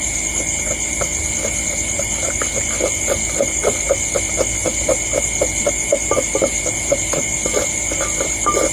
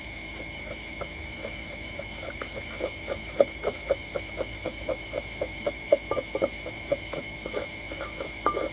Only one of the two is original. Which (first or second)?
first